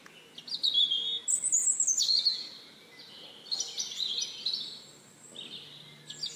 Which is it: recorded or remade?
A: recorded